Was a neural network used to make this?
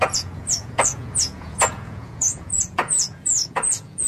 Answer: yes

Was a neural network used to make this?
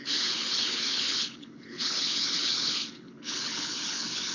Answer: yes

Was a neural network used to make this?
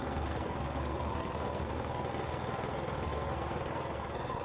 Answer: yes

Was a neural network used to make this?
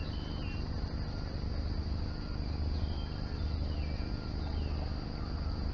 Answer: no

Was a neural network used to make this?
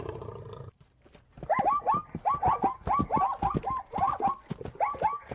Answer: no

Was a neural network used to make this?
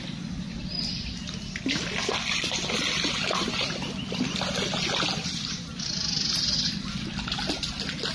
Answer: no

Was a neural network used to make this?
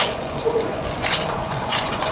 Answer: yes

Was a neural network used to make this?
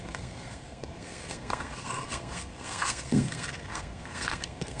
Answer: yes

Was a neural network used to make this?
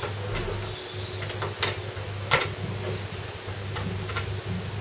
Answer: no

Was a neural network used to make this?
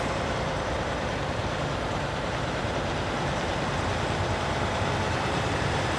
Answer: yes